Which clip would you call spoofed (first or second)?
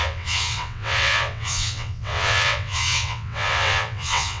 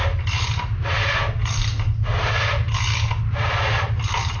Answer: first